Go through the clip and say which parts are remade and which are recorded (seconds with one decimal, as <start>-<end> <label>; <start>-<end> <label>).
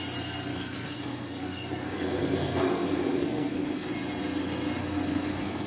0.0-0.5 recorded; 0.5-3.9 remade; 3.9-4.8 recorded; 4.8-5.7 remade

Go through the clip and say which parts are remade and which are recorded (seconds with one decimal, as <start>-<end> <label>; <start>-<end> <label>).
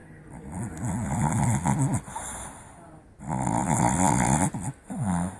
0.0-5.4 recorded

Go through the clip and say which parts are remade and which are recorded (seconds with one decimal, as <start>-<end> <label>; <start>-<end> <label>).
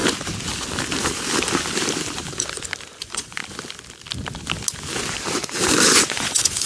0.0-3.0 recorded; 3.0-3.4 remade; 3.4-6.1 recorded; 6.1-6.7 remade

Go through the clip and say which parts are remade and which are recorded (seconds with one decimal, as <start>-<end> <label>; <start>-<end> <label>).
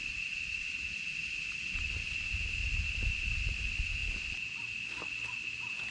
0.0-5.9 recorded